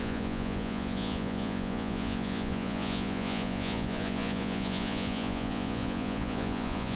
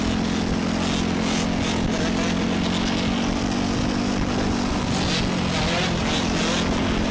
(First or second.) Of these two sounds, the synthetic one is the first